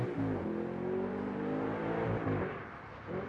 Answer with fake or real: real